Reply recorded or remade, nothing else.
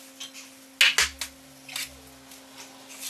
recorded